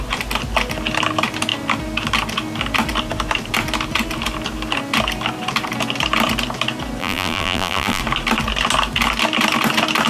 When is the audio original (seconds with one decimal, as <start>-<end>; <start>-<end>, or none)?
0.0-7.0; 8.0-10.1